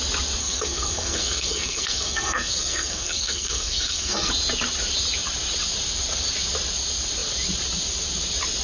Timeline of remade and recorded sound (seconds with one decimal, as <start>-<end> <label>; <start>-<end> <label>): 0.0-0.4 recorded; 0.4-4.3 remade; 4.3-8.6 recorded